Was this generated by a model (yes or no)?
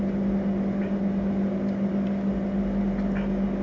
no